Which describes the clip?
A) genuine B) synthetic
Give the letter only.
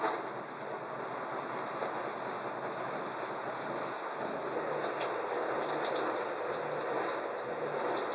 A